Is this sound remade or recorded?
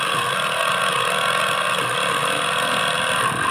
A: recorded